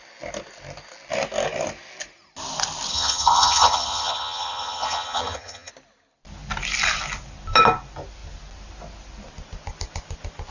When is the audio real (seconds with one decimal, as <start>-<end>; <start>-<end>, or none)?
0.0-2.9; 5.7-10.5